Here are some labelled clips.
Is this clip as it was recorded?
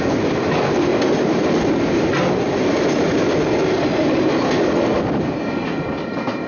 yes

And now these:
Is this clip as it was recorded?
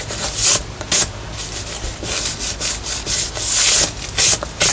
yes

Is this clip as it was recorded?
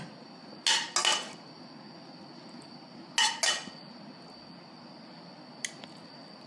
yes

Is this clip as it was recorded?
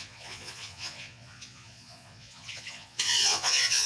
no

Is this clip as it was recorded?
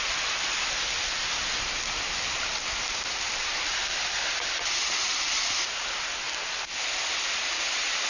yes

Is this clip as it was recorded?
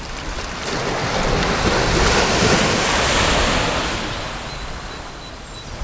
yes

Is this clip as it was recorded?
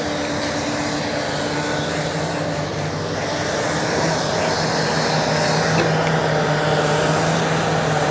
yes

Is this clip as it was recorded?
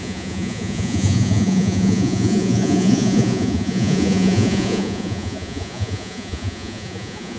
no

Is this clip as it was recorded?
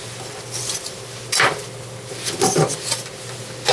yes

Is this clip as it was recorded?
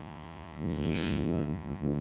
no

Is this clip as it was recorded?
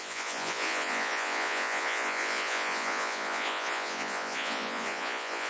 no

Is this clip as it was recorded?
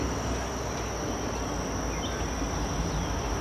yes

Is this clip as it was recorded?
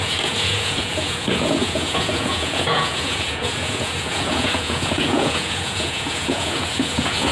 no